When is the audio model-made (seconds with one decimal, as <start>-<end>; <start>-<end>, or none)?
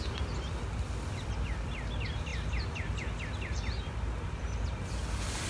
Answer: none